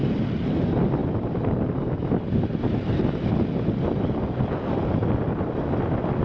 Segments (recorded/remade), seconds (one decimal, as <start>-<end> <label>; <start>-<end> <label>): 0.0-6.2 recorded